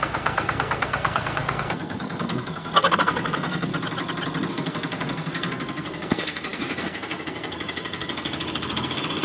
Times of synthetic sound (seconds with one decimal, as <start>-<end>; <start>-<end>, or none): 0.0-3.7; 4.5-9.2